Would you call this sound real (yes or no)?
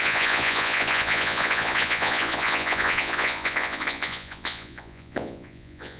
no